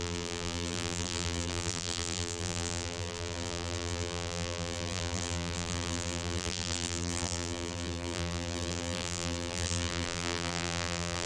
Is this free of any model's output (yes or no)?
no